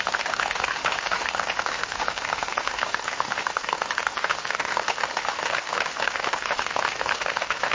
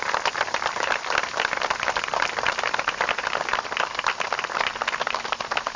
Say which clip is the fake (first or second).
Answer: first